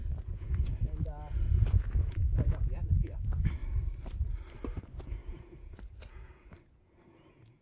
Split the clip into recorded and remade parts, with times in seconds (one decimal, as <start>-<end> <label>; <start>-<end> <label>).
0.0-0.8 remade; 0.8-1.5 recorded; 1.5-3.6 remade; 3.6-4.8 recorded; 4.8-7.6 remade